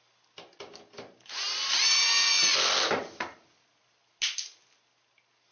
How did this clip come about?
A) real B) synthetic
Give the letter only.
A